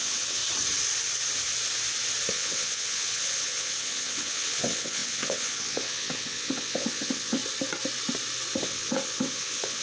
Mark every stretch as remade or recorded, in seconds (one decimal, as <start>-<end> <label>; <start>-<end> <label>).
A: 0.0-0.4 remade; 0.4-2.3 recorded; 2.3-7.4 remade; 7.4-8.6 recorded; 8.6-9.8 remade